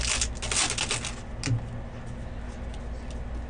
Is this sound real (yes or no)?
yes